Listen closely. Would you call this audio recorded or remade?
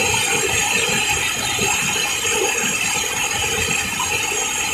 recorded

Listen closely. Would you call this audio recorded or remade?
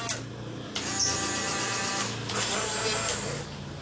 recorded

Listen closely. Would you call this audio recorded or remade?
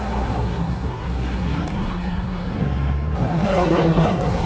remade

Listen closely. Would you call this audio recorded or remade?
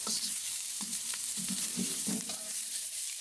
remade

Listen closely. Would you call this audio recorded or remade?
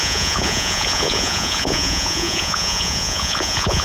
remade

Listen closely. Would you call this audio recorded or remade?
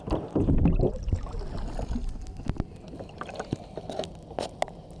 recorded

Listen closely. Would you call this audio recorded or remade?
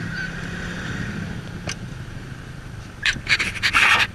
remade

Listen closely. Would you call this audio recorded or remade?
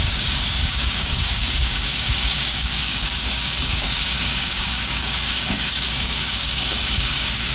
remade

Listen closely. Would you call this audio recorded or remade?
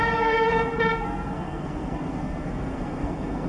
remade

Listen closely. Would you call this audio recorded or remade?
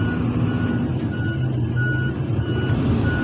recorded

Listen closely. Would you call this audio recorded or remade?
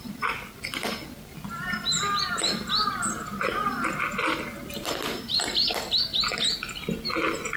recorded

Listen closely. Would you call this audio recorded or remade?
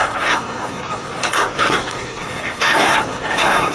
remade